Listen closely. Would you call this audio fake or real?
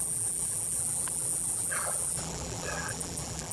fake